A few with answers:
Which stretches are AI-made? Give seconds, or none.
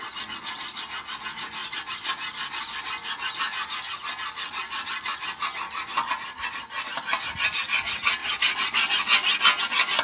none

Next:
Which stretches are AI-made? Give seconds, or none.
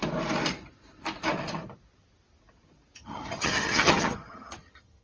3.0-5.0 (vocoder, HiFi-GAN)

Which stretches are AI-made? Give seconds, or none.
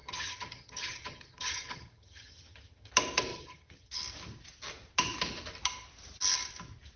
0.0-2.9 (vocoder, HiFi-GAN); 3.3-4.0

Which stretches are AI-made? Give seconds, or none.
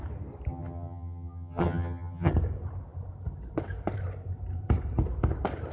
0.5-2.3 (vocoder, HiFi-GAN)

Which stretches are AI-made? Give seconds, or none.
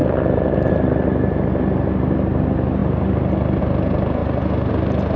none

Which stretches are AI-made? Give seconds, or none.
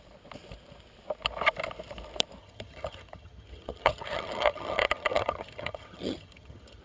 2.4-6.8 (vocoder, HiFi-GAN)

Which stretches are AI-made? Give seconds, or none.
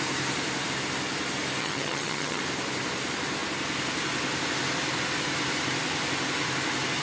1.6-2.4 (vocoder, HiFi-GAN)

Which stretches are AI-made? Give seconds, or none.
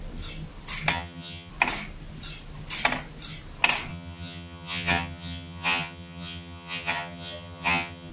0.9-1.5 (vocoder, HiFi-GAN); 3.9-8.1